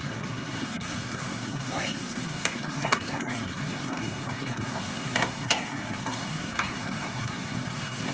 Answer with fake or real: fake